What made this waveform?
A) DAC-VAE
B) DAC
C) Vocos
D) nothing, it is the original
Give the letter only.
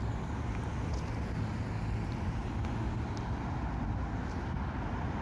D